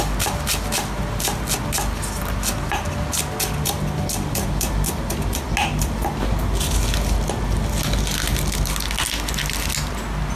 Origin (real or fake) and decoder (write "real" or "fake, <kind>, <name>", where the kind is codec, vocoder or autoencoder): real